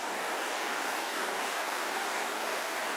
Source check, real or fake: fake